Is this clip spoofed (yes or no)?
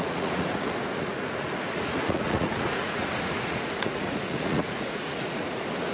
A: yes